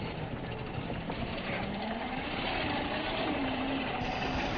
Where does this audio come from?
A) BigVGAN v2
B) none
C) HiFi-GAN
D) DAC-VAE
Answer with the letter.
A